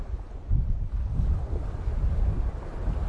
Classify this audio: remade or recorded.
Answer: recorded